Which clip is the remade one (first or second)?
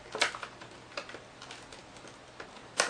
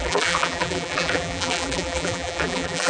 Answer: second